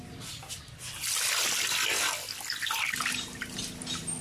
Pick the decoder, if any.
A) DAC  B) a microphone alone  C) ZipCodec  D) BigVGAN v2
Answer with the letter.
D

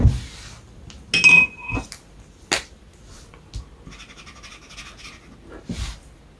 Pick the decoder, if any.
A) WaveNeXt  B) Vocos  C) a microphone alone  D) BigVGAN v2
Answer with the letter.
C